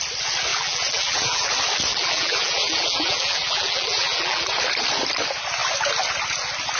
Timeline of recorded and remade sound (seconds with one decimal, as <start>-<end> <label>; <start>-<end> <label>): 0.0-0.5 recorded; 0.5-1.5 remade; 1.5-1.9 recorded; 1.9-4.5 remade; 4.5-6.8 recorded